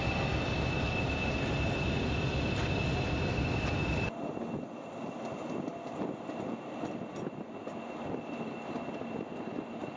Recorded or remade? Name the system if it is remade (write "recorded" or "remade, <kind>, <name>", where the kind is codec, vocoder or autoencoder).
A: recorded